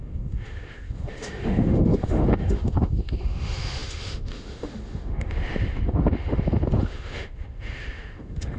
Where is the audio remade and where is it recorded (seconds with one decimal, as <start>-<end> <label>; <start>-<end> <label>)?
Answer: 0.0-8.6 remade